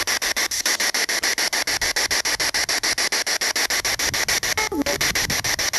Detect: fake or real real